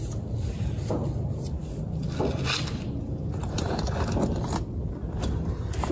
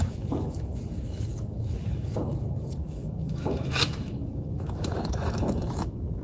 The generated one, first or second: second